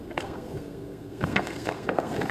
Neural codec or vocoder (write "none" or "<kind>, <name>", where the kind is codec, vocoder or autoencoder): codec, SNAC